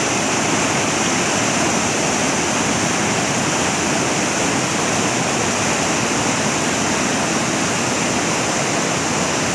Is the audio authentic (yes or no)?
yes